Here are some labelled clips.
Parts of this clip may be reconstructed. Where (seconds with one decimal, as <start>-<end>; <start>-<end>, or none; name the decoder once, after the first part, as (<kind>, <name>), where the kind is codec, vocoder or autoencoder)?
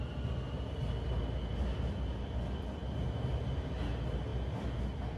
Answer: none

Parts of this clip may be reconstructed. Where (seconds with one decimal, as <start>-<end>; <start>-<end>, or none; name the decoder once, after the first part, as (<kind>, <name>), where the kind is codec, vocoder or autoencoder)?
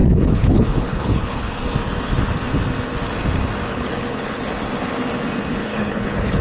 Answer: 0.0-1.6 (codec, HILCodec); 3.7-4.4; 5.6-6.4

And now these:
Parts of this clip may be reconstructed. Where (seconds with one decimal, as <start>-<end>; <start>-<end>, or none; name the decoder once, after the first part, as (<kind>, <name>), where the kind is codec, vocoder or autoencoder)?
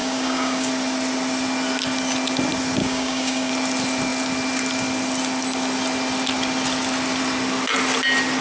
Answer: 0.0-0.7 (codec, DAC); 2.8-3.5